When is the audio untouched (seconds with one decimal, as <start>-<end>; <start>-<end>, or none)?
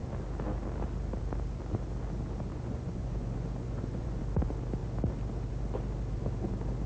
0.0-2.5; 4.2-6.9